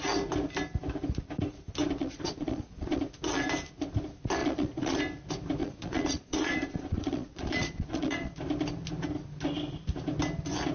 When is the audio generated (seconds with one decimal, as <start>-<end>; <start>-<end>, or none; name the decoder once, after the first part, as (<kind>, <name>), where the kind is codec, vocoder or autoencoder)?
2.0-3.0 (vocoder, Vocos); 4.4-5.0; 5.6-8.3